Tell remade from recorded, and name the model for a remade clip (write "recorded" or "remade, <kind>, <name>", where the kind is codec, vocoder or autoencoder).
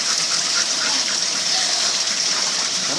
remade, vocoder, BigVGAN v2